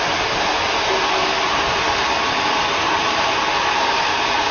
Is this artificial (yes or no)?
no